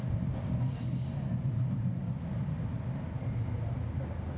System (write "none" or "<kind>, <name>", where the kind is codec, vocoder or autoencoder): none